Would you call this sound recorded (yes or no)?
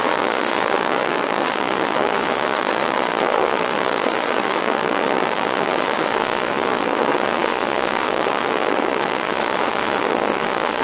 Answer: no